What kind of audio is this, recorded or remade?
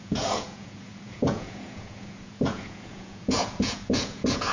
remade